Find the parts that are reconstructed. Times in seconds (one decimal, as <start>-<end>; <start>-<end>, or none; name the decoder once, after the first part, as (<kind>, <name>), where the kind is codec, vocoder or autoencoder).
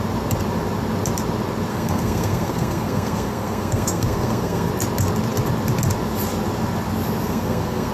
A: 1.7-4.7 (codec, SNAC); 7.2-7.9